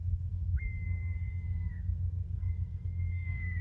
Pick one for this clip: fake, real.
fake